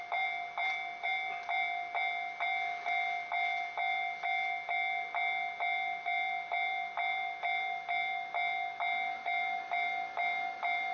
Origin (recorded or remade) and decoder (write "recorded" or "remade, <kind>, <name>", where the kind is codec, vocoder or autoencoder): recorded